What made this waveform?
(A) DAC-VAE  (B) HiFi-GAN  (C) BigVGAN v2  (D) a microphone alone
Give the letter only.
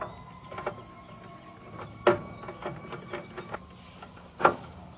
D